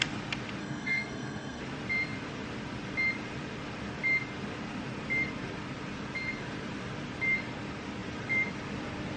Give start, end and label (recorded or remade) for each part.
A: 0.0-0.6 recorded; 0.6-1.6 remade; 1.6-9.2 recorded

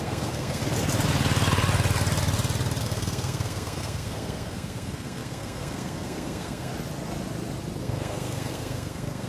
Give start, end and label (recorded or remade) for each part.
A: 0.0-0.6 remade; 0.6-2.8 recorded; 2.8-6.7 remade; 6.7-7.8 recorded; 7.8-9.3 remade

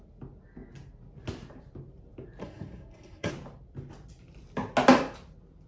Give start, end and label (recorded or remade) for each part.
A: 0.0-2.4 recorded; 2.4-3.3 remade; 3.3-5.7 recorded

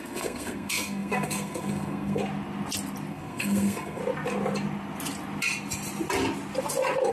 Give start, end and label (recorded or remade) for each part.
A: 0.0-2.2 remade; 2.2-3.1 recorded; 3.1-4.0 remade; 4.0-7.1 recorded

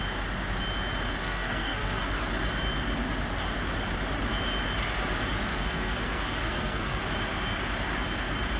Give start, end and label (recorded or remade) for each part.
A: 0.0-1.2 recorded; 1.2-2.1 remade; 2.1-5.5 recorded; 5.5-7.0 remade; 7.0-8.6 recorded

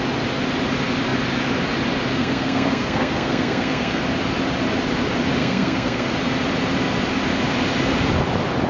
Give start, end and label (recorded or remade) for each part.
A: 0.0-2.1 recorded; 2.1-4.0 remade; 4.0-5.4 recorded; 5.4-6.1 remade; 6.1-8.7 recorded

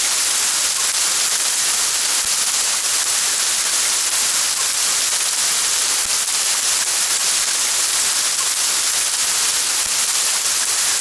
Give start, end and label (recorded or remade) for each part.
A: 0.0-11.0 recorded

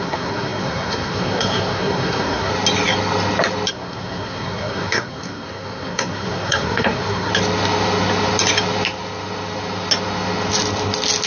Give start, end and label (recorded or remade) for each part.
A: 0.0-2.5 remade; 2.5-3.7 recorded; 3.7-7.3 remade; 7.3-11.3 recorded